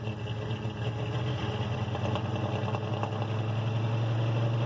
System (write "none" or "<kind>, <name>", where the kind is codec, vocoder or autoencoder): none